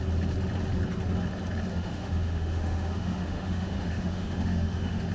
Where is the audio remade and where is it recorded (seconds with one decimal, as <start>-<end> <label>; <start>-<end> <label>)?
0.0-1.7 recorded; 1.7-5.1 remade